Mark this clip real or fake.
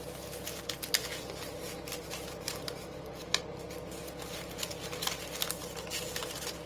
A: real